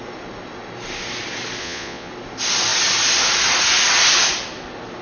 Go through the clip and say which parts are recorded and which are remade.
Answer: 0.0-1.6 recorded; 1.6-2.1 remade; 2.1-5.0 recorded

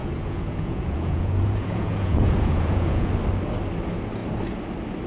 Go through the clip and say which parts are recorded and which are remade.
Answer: 0.0-3.1 remade; 3.1-5.1 recorded

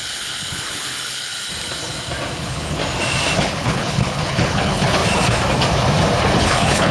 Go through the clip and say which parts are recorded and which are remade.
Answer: 0.0-1.3 remade; 1.3-2.4 recorded; 2.4-2.8 remade; 2.8-3.4 recorded; 3.4-5.0 remade; 5.0-6.4 recorded; 6.4-6.9 remade

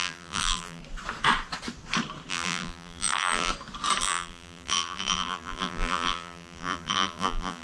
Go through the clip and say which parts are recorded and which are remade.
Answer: 0.0-0.8 remade; 0.8-2.3 recorded; 2.3-3.5 remade; 3.5-4.0 recorded; 4.0-7.6 remade

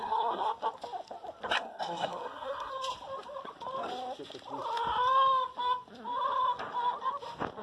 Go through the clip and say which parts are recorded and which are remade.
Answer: 0.0-0.5 remade; 0.5-1.6 recorded; 1.6-2.7 remade; 2.7-7.6 recorded

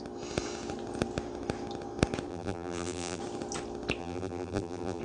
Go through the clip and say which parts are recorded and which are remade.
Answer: 0.0-2.3 recorded; 2.3-3.2 remade; 3.2-4.0 recorded; 4.0-5.0 remade

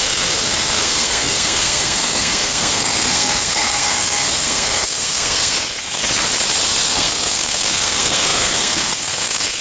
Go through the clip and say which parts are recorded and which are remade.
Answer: 0.0-6.0 remade; 6.0-6.8 recorded; 6.8-9.6 remade

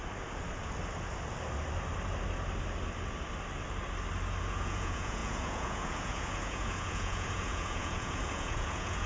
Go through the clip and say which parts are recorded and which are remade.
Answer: 0.0-4.4 recorded; 4.4-9.1 remade